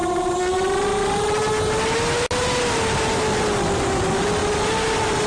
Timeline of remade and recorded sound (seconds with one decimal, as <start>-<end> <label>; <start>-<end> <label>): 0.0-5.3 recorded